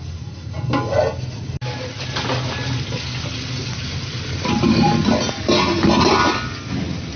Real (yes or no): yes